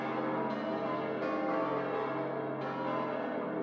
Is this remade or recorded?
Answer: recorded